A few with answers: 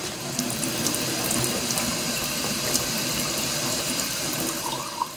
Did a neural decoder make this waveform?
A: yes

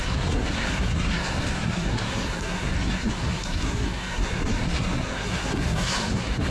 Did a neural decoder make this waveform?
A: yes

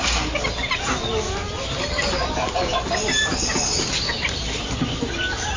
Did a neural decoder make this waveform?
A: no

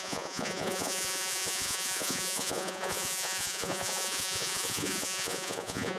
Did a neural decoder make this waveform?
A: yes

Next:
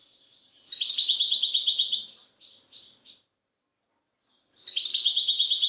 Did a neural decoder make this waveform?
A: no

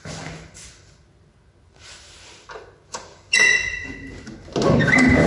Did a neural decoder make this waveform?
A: no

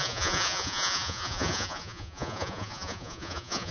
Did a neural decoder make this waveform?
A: yes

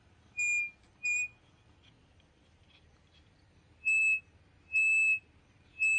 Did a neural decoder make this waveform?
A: no